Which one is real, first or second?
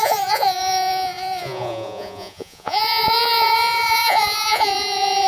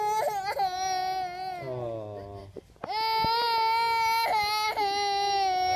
second